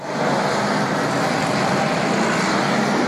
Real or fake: real